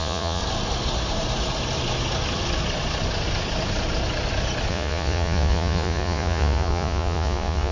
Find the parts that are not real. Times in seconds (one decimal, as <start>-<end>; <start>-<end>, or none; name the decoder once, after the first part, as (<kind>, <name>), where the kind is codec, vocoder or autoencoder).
0.0-0.4 (vocoder, Vocos); 4.7-7.7